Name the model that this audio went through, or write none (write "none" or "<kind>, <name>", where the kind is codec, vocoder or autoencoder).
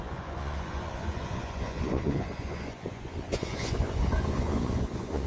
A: vocoder, Vocos